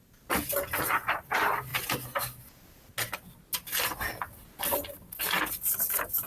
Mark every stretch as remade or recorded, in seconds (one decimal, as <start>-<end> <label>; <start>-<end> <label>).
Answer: 0.0-6.3 recorded